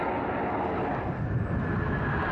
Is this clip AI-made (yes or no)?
no